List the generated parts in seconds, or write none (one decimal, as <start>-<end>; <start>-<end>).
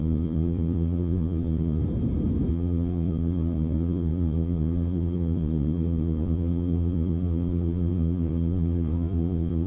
0.0-1.8; 2.5-9.7